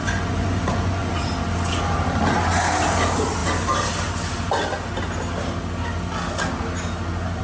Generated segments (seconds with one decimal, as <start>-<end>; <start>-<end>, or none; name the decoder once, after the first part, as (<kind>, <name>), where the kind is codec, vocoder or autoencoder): 0.0-1.1 (vocoder, Vocos)